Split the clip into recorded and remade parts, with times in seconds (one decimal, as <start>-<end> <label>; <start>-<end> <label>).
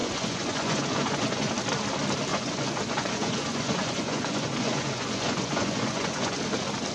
0.0-1.5 remade; 1.5-2.3 recorded; 2.3-6.4 remade; 6.4-6.9 recorded